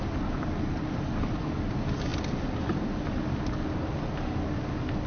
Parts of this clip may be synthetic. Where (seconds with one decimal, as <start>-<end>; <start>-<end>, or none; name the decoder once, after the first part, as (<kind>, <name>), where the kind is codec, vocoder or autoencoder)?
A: none